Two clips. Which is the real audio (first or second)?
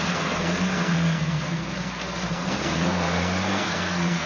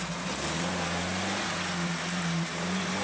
second